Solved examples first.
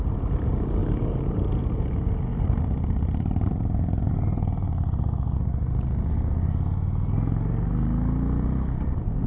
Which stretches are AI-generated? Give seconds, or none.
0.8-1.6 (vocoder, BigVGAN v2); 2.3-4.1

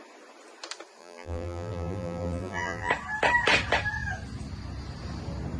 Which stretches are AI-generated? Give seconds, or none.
1.0-2.9 (vocoder, BigVGAN v2)

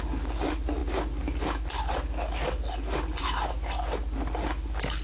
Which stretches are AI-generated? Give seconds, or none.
none

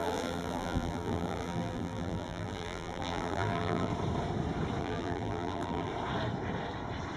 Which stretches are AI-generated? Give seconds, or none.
0.0-3.9 (vocoder, BigVGAN v2); 4.8-5.9

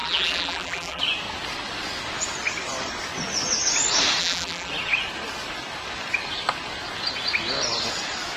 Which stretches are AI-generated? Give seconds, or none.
0.0-1.0 (vocoder, BigVGAN v2); 4.2-4.7